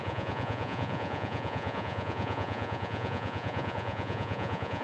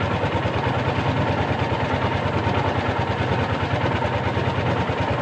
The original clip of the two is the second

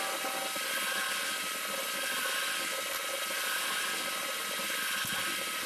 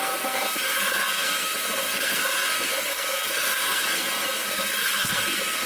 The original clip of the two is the first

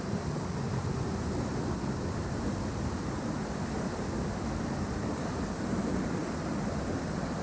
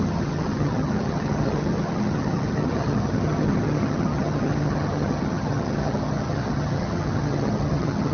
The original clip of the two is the first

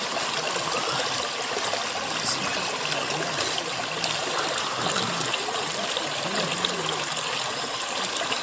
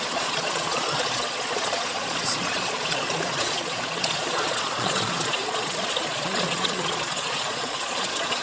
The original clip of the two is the first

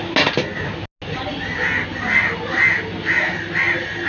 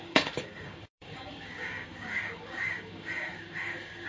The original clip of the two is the first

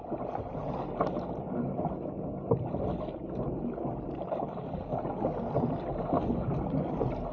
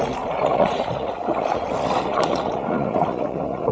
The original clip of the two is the first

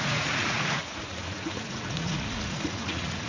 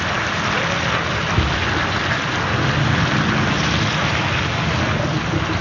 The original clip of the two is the second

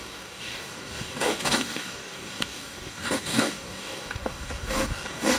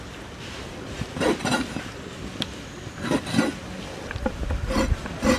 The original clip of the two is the second